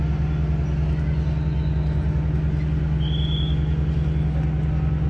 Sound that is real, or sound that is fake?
real